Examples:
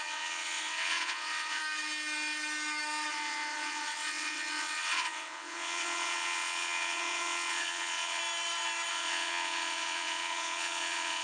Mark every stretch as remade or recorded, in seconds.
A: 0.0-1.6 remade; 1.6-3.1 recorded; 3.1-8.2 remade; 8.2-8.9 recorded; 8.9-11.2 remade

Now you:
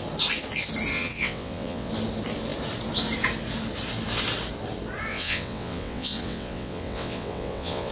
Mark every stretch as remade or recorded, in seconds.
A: 0.0-0.9 recorded; 0.9-1.9 remade; 1.9-5.1 recorded; 5.1-7.9 remade